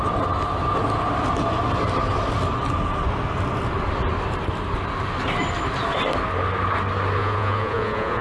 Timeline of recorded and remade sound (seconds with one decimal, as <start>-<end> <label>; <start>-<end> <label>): 0.0-7.2 recorded; 7.2-8.2 remade